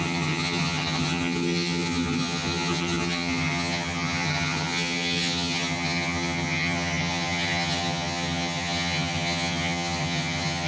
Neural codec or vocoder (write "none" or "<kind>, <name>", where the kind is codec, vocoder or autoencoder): vocoder, HiFi-GAN